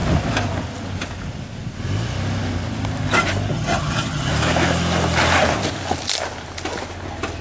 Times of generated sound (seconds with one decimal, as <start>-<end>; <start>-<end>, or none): 3.5-4.3

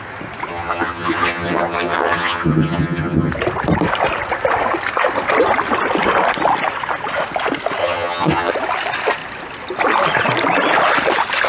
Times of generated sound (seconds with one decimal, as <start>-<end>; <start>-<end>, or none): 0.5-3.3; 7.8-8.5

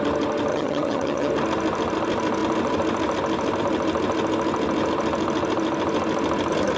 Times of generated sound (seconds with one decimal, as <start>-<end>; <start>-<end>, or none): 0.5-1.3